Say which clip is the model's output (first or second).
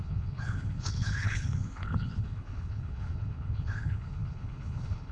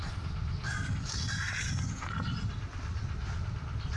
first